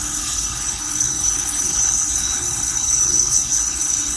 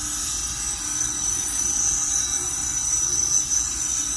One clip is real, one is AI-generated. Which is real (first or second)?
second